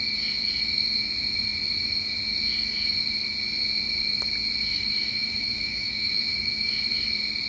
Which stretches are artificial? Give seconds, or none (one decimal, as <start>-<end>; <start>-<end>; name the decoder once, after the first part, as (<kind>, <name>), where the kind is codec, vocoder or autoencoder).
4.7-6.7 (autoencoder, DAC-VAE)